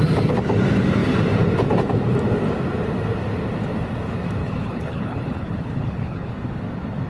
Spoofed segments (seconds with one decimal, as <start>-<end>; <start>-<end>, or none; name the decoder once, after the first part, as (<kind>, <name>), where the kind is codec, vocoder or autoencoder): 4.4-6.3 (codec, HILCodec)